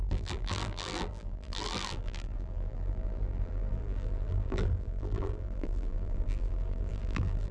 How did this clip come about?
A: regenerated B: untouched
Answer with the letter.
A